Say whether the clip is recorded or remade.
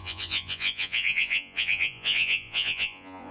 remade